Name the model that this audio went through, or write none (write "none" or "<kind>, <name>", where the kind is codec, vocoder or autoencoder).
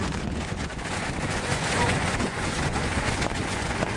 vocoder, Vocos